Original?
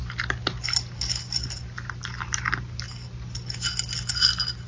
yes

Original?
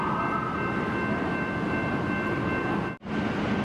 yes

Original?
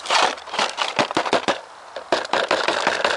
no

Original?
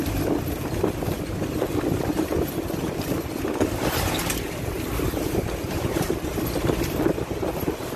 yes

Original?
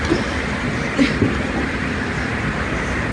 no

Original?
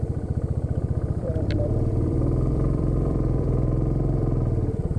no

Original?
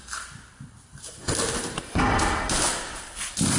no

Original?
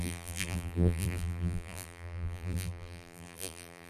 no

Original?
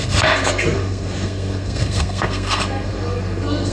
no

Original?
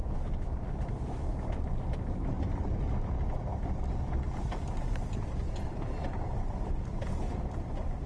yes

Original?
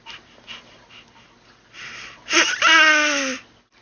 yes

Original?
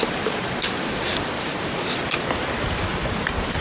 yes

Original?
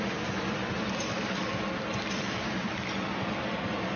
yes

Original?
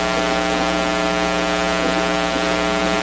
yes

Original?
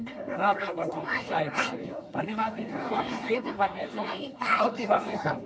no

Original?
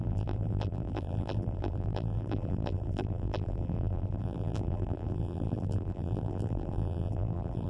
no